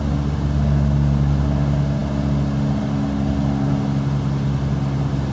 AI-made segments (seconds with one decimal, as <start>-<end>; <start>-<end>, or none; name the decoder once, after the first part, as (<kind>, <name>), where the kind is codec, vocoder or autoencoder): none